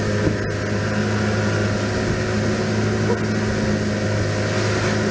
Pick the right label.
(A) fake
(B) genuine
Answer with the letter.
B